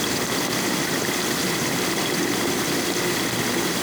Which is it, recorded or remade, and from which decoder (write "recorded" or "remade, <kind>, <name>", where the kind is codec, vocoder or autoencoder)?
recorded